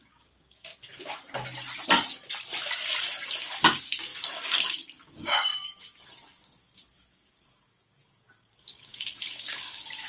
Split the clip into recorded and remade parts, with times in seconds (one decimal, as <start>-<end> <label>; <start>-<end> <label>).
0.0-0.7 remade; 0.7-3.1 recorded; 3.1-10.1 remade